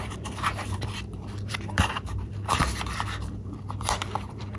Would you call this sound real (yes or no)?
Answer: no